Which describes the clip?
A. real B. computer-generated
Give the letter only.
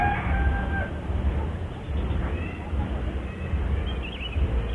A